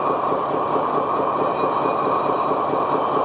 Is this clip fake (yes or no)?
no